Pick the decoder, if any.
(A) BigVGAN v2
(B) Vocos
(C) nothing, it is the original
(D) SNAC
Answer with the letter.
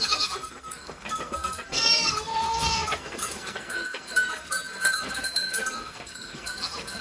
D